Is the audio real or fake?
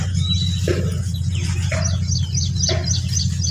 real